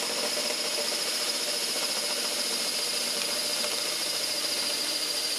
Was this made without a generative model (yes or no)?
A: no